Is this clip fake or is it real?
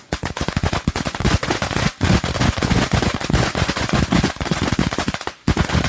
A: fake